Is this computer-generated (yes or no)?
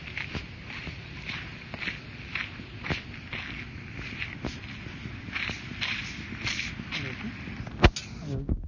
no